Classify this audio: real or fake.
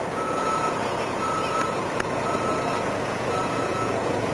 fake